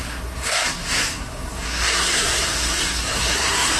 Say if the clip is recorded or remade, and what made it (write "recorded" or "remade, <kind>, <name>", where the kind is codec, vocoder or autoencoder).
remade, codec, SNAC